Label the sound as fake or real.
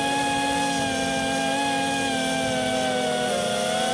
real